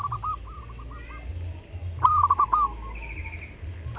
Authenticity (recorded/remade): recorded